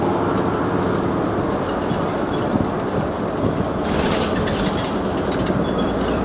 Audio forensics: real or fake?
real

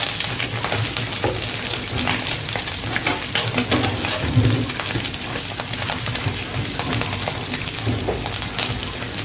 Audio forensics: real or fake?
real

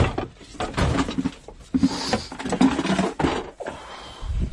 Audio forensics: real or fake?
real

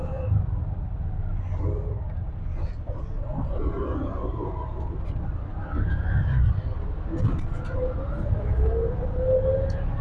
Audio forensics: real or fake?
real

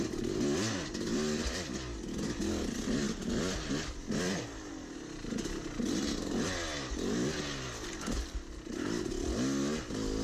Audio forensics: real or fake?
real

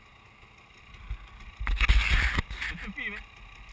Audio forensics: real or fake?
real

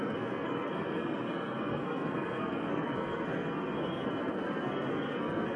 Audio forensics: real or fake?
fake